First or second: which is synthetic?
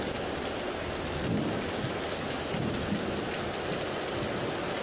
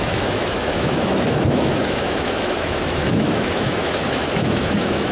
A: second